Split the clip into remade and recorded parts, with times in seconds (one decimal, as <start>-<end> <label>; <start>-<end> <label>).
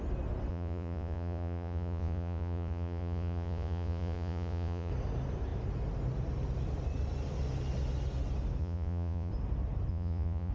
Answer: 0.0-0.5 recorded; 0.5-4.9 remade; 4.9-8.6 recorded; 8.6-9.3 remade; 9.3-9.9 recorded; 9.9-10.5 remade